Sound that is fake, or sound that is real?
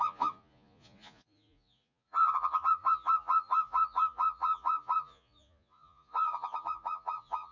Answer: fake